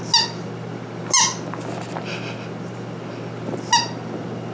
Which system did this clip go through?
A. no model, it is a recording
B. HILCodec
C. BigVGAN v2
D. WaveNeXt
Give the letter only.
A